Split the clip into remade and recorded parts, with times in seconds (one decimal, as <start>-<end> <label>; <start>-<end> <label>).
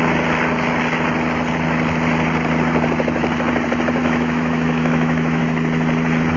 0.0-4.0 recorded; 4.0-5.4 remade; 5.4-6.4 recorded